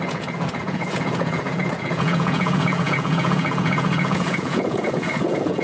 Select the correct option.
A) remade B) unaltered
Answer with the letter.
A